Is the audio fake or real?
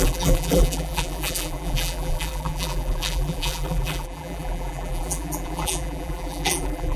fake